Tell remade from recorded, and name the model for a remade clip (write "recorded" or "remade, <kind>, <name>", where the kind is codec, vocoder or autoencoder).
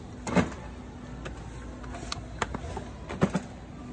recorded